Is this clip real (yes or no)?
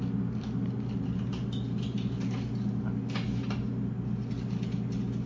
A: yes